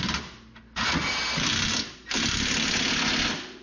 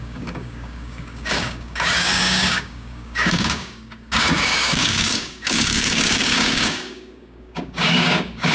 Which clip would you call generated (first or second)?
second